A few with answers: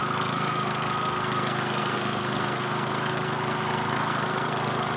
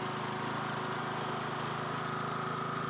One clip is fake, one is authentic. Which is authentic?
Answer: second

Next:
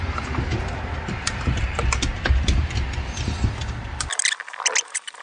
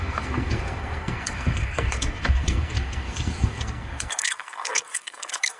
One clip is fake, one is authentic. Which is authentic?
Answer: first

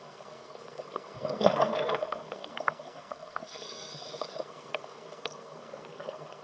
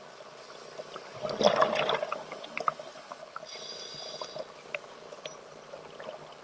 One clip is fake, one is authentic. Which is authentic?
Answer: second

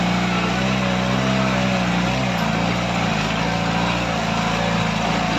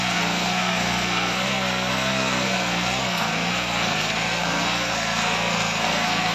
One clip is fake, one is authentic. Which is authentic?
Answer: first